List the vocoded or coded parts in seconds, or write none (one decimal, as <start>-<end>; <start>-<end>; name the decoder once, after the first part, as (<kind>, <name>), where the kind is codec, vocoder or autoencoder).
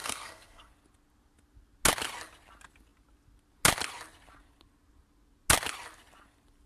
0.0-0.7 (codec, SNAC)